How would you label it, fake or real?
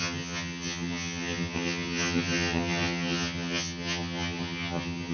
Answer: fake